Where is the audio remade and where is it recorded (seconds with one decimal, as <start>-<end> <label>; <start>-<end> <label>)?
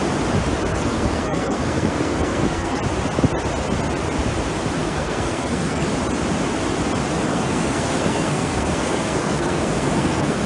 0.0-0.7 recorded; 0.7-2.8 remade; 2.8-4.8 recorded; 4.8-5.9 remade; 5.9-7.3 recorded; 7.3-10.5 remade